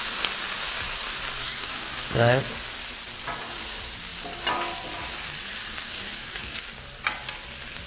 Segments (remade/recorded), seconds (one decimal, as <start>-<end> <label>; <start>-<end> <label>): 0.0-1.4 recorded; 1.4-2.4 remade; 2.4-5.6 recorded; 5.6-6.6 remade; 6.6-7.9 recorded

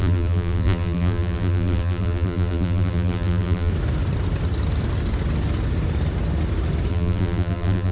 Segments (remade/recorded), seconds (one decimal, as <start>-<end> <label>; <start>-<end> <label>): 0.0-3.7 remade; 3.7-6.9 recorded; 6.9-7.9 remade